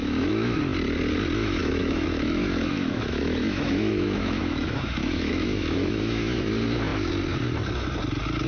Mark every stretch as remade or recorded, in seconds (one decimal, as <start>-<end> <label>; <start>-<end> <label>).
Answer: 0.0-0.6 remade; 0.6-1.4 recorded; 1.4-6.5 remade; 6.5-8.5 recorded